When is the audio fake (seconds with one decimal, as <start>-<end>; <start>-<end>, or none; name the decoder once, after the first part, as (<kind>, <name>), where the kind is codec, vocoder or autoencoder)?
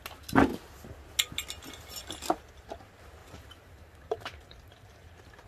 3.2-5.5 (vocoder, BigVGAN v2)